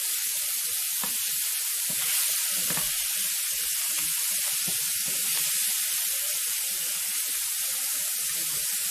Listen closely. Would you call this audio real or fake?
fake